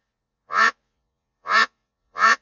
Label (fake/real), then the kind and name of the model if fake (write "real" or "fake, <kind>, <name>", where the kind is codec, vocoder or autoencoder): fake, vocoder, Vocos